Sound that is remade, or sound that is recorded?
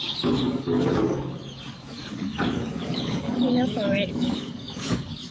remade